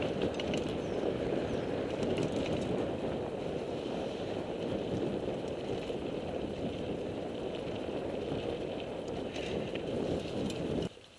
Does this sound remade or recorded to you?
remade